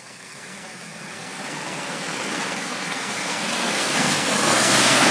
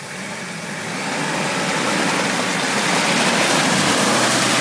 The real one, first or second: second